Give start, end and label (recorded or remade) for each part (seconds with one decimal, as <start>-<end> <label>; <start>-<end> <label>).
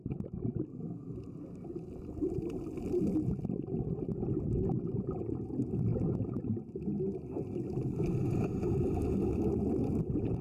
0.0-10.4 recorded